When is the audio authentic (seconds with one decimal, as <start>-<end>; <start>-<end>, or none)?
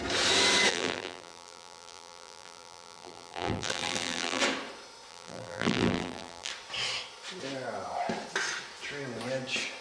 0.0-0.7; 4.4-5.1; 6.5-9.8